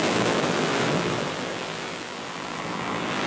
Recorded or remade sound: remade